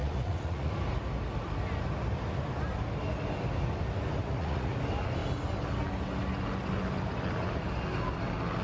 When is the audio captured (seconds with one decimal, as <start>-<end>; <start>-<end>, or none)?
0.7-4.2; 4.7-8.6